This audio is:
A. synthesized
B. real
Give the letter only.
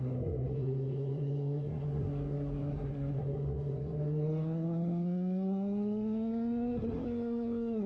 A